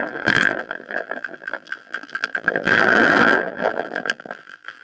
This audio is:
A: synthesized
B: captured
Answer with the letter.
A